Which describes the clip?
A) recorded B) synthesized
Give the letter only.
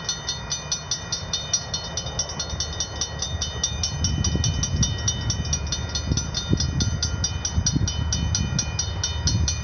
A